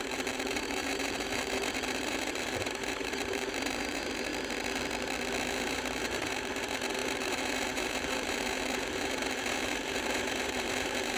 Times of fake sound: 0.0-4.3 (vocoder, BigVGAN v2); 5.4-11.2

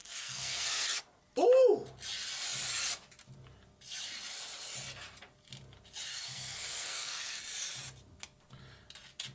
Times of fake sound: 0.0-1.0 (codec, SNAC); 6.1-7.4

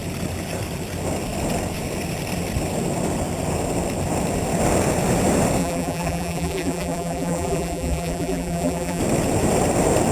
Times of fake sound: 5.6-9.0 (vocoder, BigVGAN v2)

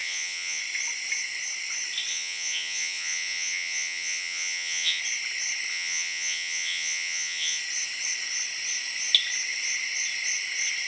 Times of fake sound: 0.0-0.6 (vocoder, Vocos); 2.1-5.0; 5.7-7.6

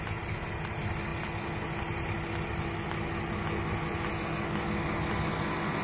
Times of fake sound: none